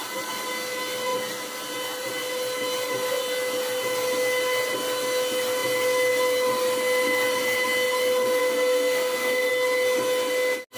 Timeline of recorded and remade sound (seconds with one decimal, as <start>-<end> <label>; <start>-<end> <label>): 0.0-8.4 recorded; 8.4-9.5 remade; 9.5-10.8 recorded